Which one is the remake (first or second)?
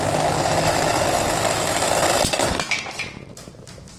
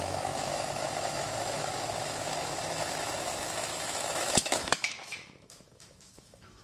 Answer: second